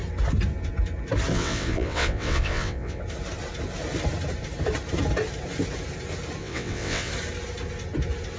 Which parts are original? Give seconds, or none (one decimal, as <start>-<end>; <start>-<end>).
0.0-1.3; 3.0-6.4; 7.1-8.4